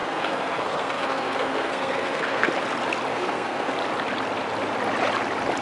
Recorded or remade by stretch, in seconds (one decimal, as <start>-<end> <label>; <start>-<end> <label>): 0.0-2.5 remade; 2.5-3.1 recorded; 3.1-3.7 remade; 3.7-5.6 recorded